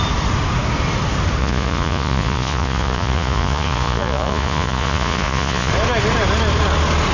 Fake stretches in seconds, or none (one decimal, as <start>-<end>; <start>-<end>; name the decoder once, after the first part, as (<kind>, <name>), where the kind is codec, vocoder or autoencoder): 1.4-5.7 (vocoder, Vocos)